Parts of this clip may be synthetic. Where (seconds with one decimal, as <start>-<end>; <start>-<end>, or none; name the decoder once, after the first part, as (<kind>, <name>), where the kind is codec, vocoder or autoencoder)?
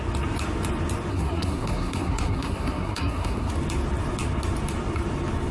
1.1-3.5 (codec, SNAC)